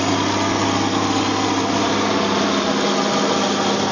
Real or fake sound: real